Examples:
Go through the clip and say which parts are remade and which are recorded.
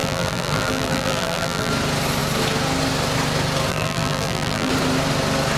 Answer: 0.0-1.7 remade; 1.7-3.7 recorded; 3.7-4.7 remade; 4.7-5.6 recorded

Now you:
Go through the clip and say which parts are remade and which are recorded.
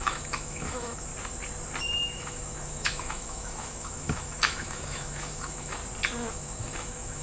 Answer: 0.0-1.1 remade; 1.1-1.8 recorded; 1.8-5.8 remade; 5.8-6.3 recorded; 6.3-7.2 remade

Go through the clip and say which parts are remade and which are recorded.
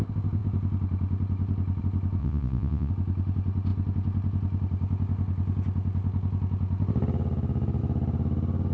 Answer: 0.0-2.2 recorded; 2.2-2.9 remade; 2.9-8.7 recorded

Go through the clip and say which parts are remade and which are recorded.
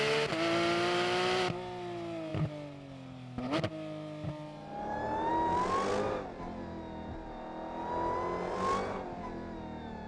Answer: 0.0-10.1 recorded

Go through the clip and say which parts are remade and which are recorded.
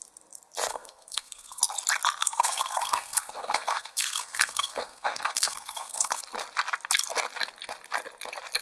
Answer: 0.0-0.7 recorded; 0.7-1.6 remade; 1.6-2.2 recorded; 2.2-6.2 remade; 6.2-8.6 recorded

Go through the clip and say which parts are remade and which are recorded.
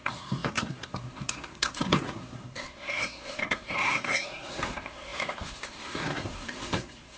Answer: 0.0-7.2 remade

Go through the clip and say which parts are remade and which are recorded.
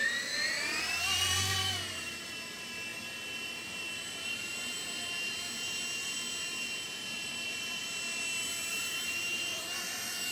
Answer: 0.0-7.8 remade; 7.8-8.7 recorded; 8.7-10.3 remade